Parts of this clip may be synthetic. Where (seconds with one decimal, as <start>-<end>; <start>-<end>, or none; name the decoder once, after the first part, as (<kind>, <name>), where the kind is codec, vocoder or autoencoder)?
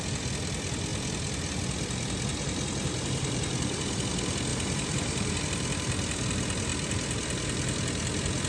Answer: 2.3-4.1 (vocoder, BigVGAN v2); 4.5-5.4